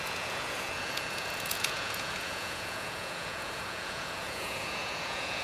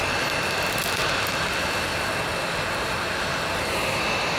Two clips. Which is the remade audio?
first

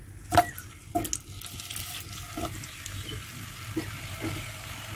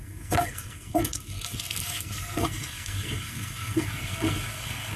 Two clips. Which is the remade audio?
second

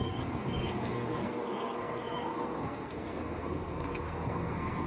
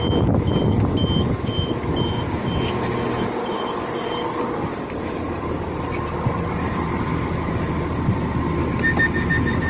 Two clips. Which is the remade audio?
first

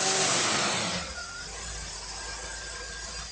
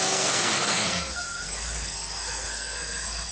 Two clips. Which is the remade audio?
second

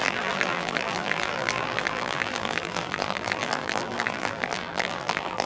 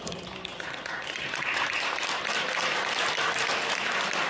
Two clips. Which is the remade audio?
first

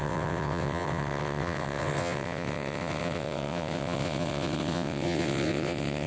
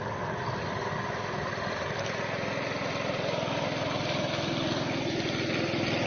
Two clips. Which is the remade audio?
first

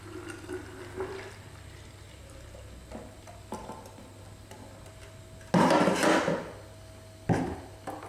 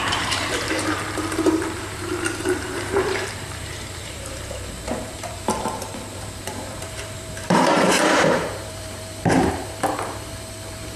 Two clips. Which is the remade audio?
second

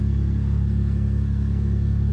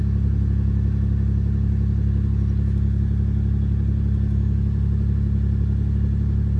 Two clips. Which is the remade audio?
first